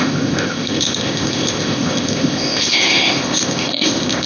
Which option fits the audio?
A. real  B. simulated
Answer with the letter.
B